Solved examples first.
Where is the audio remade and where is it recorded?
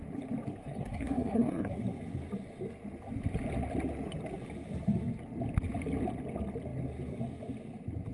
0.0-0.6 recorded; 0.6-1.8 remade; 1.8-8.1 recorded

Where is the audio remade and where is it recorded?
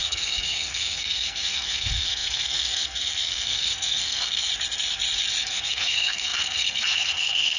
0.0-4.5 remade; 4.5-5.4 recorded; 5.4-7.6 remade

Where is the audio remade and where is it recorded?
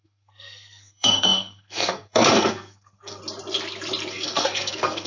0.0-3.2 remade; 3.2-4.1 recorded; 4.1-5.1 remade